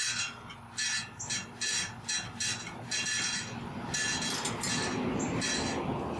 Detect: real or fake real